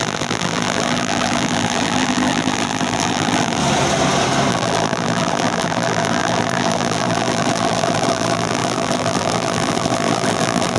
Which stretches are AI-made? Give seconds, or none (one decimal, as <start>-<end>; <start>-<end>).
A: 0.0-3.6; 4.5-10.8